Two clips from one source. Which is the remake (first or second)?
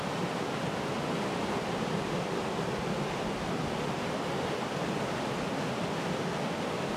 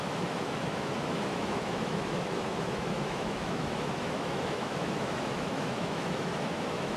second